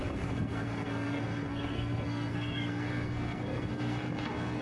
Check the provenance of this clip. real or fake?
fake